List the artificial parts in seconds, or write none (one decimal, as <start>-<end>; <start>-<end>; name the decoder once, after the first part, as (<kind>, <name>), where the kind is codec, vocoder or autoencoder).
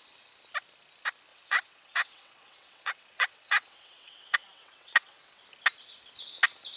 1.3-5.4 (vocoder, WaveNeXt)